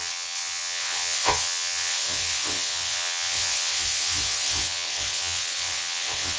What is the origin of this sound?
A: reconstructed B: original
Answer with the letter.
A